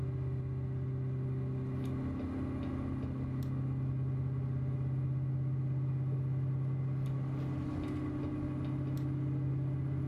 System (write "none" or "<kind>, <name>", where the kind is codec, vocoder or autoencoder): none